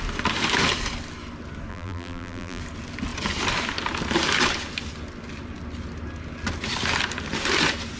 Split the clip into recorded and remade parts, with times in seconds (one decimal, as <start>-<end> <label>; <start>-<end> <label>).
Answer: 0.0-1.7 recorded; 1.7-2.6 remade; 2.6-8.0 recorded